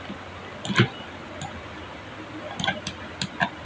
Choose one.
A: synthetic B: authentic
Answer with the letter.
B